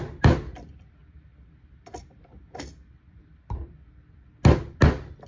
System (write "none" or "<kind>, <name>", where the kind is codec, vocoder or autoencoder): none